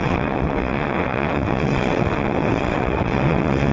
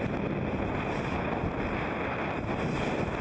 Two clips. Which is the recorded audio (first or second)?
second